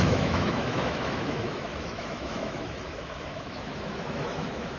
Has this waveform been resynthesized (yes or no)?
yes